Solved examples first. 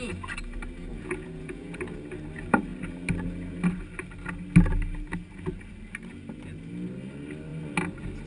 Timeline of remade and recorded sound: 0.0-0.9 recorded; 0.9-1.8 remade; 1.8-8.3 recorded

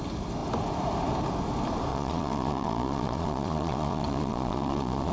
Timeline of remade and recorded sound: 0.0-1.9 recorded; 1.9-5.1 remade

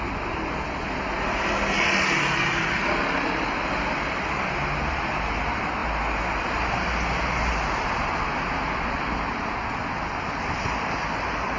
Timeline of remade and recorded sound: 0.0-11.6 recorded